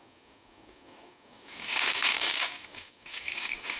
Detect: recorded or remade remade